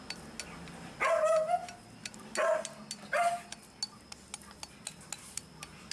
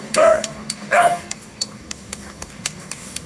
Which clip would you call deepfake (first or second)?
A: second